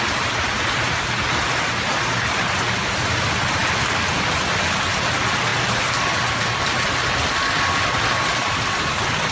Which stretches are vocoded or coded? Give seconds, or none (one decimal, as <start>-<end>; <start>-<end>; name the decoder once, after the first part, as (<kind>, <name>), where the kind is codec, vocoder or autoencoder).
none